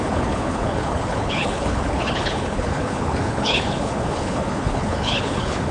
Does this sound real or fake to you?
fake